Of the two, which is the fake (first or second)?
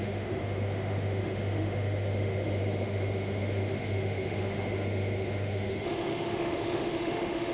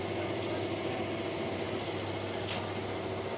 first